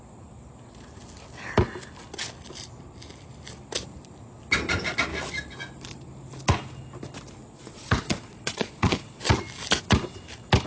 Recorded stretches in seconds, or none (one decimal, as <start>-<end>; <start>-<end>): 0.0-7.4; 9.3-10.7